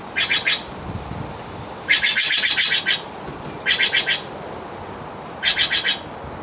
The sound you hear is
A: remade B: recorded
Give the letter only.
B